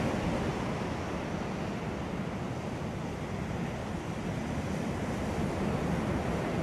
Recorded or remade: recorded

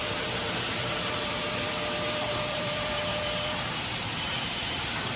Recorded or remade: remade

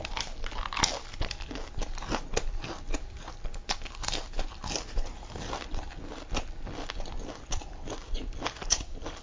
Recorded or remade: recorded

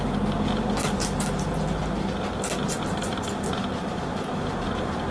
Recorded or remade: recorded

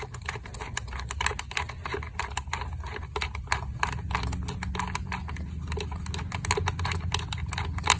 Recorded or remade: recorded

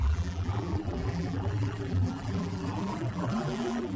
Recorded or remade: remade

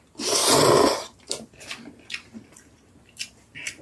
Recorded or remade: recorded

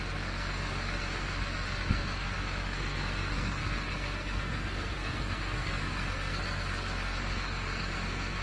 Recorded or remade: remade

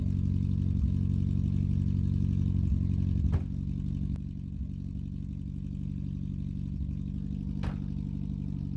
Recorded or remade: recorded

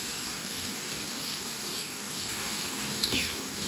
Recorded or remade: remade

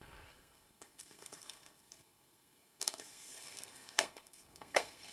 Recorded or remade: remade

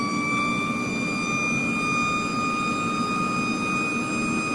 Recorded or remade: recorded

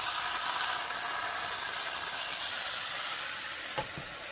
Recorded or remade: recorded